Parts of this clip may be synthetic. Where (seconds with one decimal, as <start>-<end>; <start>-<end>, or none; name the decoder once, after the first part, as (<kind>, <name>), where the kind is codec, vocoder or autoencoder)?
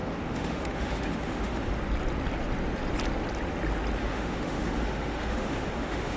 0.0-1.7 (autoencoder, DAC-VAE); 4.0-6.2